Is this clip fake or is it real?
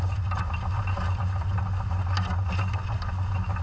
real